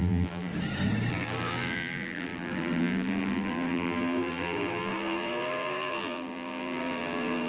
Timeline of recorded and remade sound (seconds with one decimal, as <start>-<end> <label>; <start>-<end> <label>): 0.0-0.5 remade; 0.5-1.1 recorded; 1.1-7.5 remade